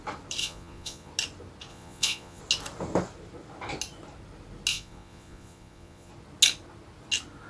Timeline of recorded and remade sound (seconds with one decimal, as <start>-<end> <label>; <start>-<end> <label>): 0.0-0.4 recorded; 0.4-1.1 remade; 1.1-1.7 recorded; 1.7-2.4 remade; 2.4-4.7 recorded; 4.7-6.1 remade; 6.1-7.5 recorded